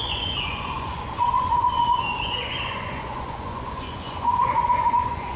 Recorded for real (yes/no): no